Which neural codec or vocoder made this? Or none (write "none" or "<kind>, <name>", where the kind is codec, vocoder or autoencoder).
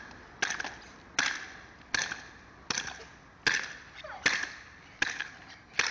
none